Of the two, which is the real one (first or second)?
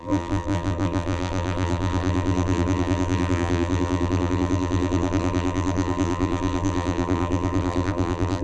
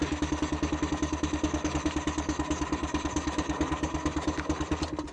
second